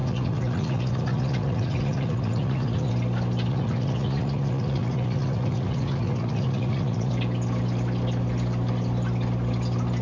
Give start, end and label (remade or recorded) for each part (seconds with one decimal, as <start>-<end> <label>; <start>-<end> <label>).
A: 0.0-2.9 remade; 2.9-3.5 recorded; 3.5-7.1 remade; 7.1-10.0 recorded